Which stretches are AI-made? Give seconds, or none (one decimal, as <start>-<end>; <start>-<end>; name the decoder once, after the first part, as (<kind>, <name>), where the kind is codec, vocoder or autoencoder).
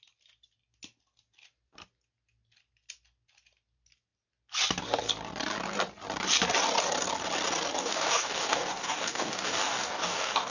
7.8-10.5 (codec, DAC)